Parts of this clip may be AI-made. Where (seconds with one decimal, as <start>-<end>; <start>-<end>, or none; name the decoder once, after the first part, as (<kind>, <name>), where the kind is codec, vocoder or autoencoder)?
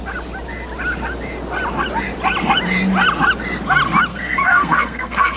4.1-5.4 (codec, SNAC)